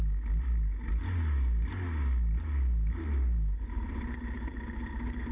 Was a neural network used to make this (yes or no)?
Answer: no